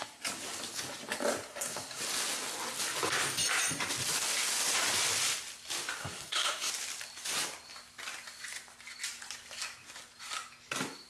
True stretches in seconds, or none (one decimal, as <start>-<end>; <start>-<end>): 0.0-1.5; 2.0-6.0; 6.7-11.1